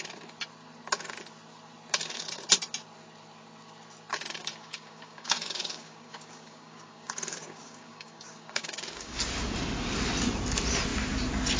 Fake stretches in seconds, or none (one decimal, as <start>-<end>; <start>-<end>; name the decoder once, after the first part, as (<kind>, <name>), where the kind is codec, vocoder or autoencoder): 4.1-9.2 (codec, DAC)